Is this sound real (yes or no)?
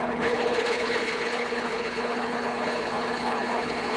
no